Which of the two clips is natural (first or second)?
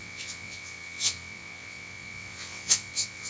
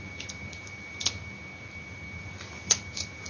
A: second